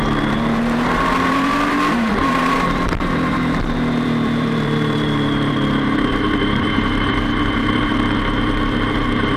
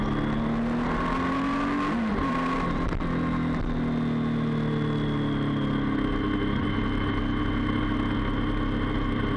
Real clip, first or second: second